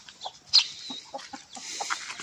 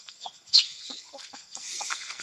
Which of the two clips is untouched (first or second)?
first